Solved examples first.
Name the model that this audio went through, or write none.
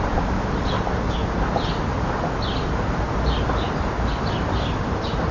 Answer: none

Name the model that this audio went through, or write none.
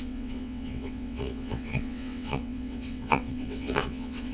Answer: vocoder, WaveNeXt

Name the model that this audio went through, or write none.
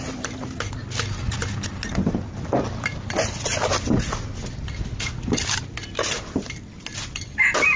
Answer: none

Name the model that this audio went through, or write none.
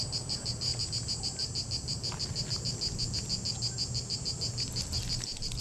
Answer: none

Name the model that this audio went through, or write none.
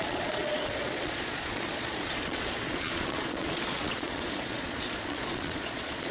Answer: vocoder, Vocos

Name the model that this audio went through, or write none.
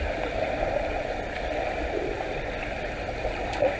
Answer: none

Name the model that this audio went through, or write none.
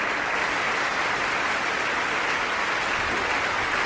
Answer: none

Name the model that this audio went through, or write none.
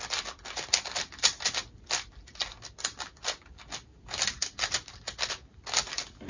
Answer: none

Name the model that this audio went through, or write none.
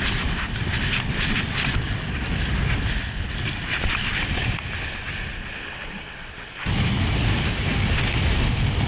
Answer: none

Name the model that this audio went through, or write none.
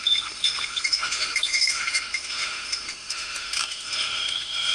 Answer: autoencoder, DAC-VAE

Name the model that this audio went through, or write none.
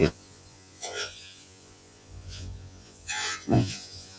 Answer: vocoder, Vocos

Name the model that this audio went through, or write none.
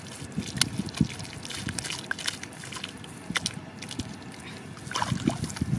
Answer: none